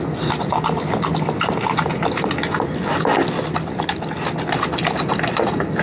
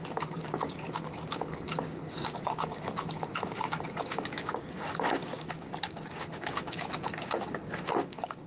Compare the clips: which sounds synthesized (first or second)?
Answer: second